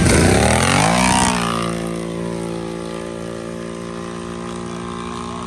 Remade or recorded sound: recorded